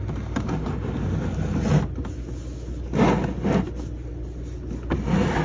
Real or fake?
real